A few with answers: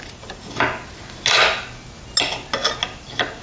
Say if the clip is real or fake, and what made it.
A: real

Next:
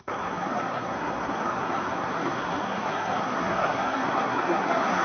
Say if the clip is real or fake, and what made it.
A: fake, codec, SNAC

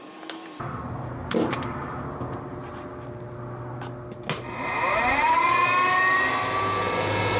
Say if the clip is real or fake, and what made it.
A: real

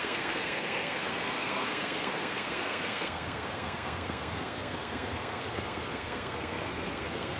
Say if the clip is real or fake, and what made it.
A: fake, codec, SNAC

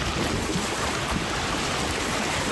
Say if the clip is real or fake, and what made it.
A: real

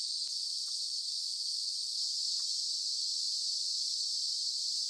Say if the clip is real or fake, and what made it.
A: real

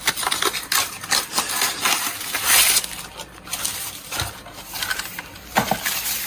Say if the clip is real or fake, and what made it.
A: real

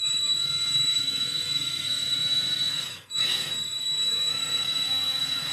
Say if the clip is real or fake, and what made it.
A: fake, codec, SNAC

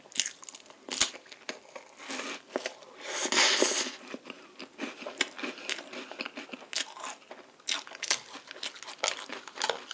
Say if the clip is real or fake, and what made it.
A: real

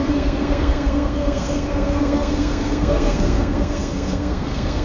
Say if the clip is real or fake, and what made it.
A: fake, codec, SNAC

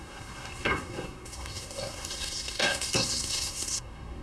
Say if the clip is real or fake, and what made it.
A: fake, codec, SNAC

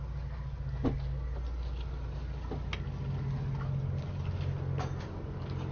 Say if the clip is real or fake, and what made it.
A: real